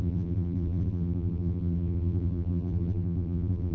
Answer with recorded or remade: remade